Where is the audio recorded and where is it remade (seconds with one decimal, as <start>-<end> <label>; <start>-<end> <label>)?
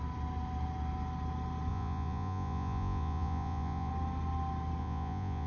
0.0-1.7 recorded; 1.7-3.9 remade; 3.9-4.8 recorded; 4.8-5.5 remade